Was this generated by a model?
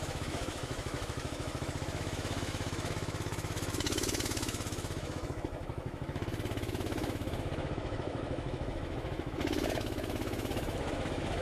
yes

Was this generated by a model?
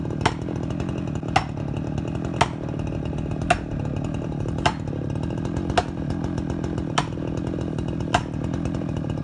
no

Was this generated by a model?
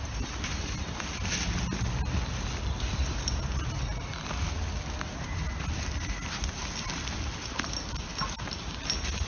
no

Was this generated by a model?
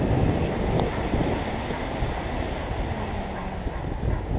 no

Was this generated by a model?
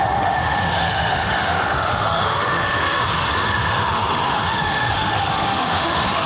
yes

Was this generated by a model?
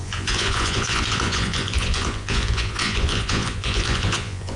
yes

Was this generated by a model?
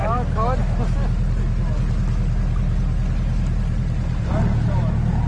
no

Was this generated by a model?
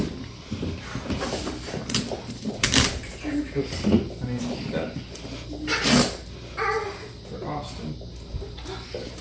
no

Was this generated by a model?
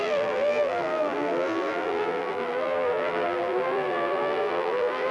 yes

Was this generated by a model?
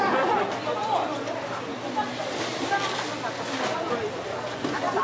no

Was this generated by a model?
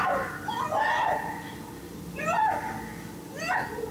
no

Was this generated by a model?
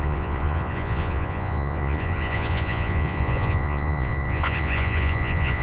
yes